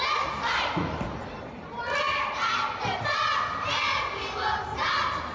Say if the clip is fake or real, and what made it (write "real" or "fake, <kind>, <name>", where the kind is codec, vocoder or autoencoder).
real